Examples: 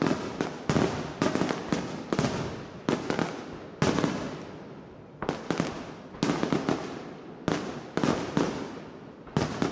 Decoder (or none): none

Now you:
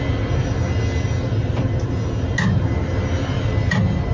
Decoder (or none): none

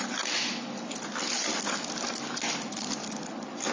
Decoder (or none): none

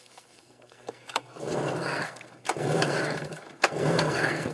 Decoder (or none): codec, SNAC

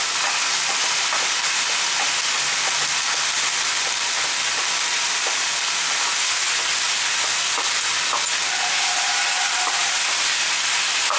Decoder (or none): none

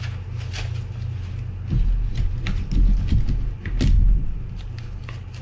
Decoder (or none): none